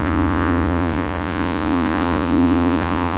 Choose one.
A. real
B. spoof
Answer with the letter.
B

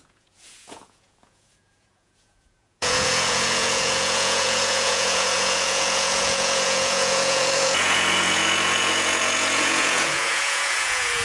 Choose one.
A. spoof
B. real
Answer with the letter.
A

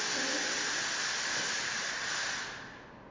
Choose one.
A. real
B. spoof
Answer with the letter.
A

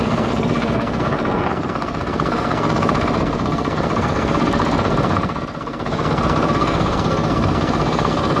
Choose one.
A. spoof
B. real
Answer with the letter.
A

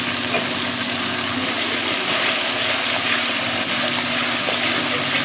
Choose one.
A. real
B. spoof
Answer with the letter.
A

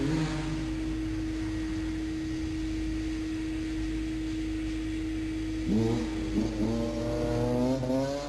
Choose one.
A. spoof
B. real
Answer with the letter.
B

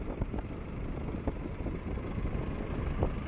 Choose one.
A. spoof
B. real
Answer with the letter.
B